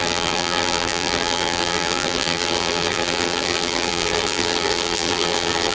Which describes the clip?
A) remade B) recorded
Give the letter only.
A